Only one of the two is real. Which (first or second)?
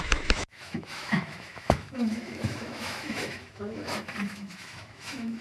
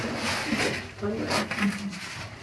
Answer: second